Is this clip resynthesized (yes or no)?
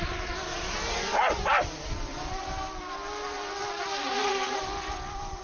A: no